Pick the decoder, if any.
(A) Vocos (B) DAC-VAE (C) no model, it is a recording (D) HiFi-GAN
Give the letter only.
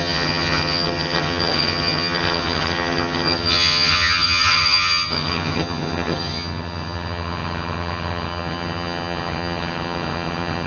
D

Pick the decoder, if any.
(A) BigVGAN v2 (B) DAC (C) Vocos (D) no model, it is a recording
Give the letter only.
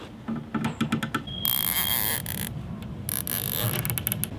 D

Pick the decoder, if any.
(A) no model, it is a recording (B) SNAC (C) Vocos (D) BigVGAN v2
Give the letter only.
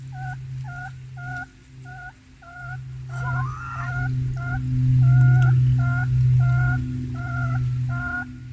A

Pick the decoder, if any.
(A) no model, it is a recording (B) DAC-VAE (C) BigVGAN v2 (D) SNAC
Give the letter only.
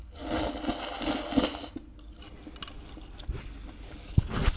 A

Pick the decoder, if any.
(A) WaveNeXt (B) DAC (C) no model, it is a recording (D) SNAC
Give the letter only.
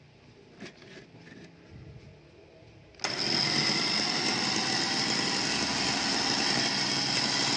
C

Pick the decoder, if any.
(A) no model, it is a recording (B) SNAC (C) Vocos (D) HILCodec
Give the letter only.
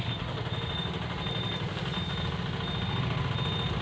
A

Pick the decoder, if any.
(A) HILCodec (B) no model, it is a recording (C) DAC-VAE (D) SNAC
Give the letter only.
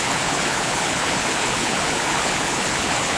A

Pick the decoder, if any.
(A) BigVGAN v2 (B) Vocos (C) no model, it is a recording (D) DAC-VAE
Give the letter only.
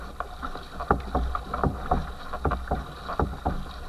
C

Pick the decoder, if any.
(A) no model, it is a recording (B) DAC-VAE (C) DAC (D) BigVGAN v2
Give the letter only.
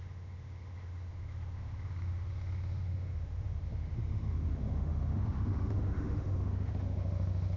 B